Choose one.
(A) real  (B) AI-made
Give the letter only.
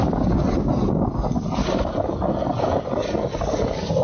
A